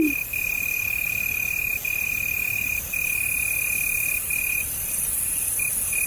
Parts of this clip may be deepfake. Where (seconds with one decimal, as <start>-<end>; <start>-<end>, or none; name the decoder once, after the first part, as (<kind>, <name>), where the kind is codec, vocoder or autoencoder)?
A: none